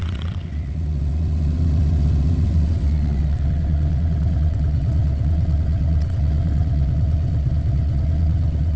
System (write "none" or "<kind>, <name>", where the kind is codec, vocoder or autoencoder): vocoder, WaveNeXt